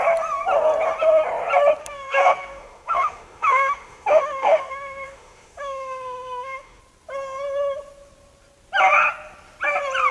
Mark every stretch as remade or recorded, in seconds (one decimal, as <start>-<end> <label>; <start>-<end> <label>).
0.0-1.8 recorded; 1.8-6.8 remade; 6.8-10.1 recorded